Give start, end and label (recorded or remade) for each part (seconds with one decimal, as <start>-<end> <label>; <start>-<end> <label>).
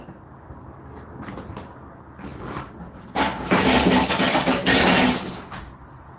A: 0.0-6.2 recorded